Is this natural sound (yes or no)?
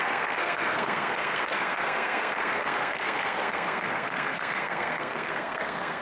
no